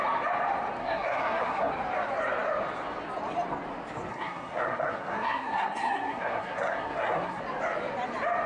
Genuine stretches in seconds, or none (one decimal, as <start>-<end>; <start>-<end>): 0.0-0.8; 1.7-4.1; 7.4-8.5